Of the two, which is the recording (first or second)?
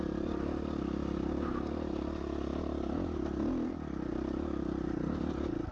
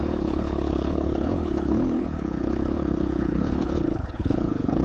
first